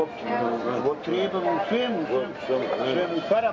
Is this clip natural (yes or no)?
yes